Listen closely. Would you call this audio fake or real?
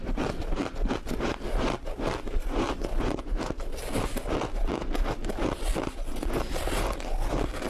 real